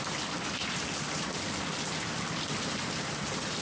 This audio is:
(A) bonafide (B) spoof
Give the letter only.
A